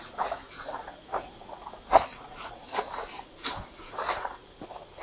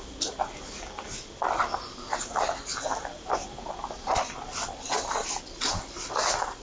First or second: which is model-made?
first